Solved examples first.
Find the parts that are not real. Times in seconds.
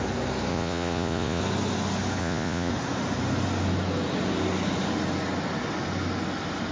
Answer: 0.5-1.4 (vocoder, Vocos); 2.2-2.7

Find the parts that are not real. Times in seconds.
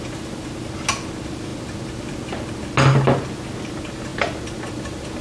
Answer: none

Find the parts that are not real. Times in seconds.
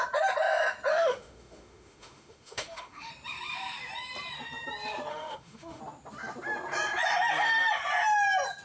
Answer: 0.9-3.1 (autoencoder, DAC-VAE); 5.1-5.8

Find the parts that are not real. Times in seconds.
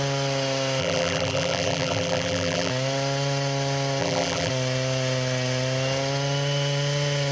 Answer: 0.8-2.7 (vocoder, BigVGAN v2); 4.0-4.5